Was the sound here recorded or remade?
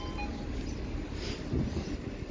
recorded